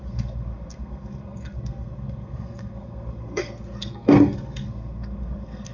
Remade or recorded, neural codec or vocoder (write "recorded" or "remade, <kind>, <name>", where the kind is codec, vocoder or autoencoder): remade, codec, SNAC